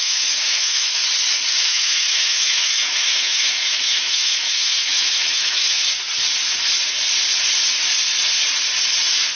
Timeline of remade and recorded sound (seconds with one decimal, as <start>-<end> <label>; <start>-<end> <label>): 0.0-1.0 remade; 1.0-1.5 recorded; 1.5-5.8 remade; 5.8-9.4 recorded